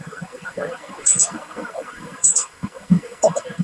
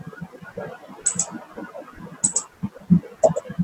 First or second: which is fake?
first